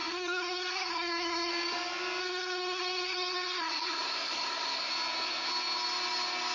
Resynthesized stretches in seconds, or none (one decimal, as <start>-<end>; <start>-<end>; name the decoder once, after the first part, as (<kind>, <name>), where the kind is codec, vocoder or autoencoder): 0.0-1.5 (codec, SNAC); 2.2-4.9